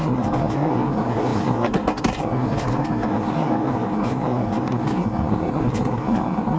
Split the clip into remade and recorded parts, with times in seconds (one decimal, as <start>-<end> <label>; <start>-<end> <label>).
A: 0.0-6.6 remade